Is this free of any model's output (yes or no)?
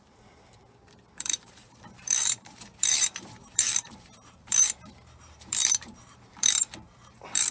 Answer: no